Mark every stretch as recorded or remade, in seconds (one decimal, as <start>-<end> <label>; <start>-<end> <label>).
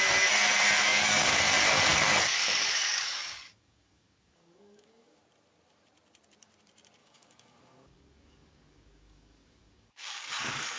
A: 0.0-0.9 recorded; 0.9-1.4 remade; 1.4-1.9 recorded; 1.9-5.2 remade; 5.2-7.0 recorded; 7.0-10.8 remade